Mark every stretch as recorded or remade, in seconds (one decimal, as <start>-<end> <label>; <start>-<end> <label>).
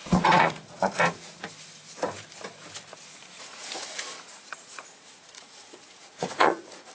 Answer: 0.0-1.5 remade; 1.5-3.2 recorded; 3.2-6.9 remade